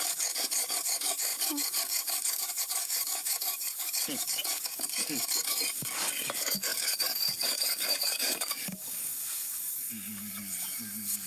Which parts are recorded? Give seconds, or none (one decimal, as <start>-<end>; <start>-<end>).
none